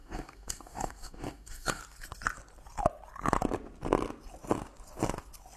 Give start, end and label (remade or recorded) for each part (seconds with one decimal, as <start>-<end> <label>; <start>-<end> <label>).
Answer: 0.0-1.8 remade; 1.8-5.6 recorded